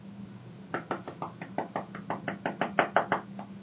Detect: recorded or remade recorded